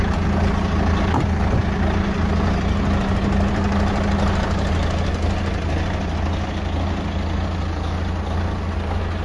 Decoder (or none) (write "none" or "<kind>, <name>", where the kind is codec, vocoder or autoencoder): none